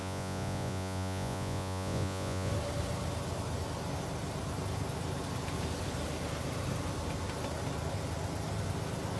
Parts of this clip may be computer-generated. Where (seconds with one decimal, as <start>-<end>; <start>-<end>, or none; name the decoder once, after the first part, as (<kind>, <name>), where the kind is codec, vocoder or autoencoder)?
0.0-2.5 (vocoder, Vocos)

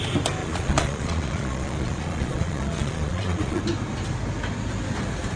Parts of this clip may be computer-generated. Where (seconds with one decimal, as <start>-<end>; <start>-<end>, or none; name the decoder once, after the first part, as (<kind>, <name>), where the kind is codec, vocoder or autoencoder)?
0.4-3.6 (vocoder, Vocos)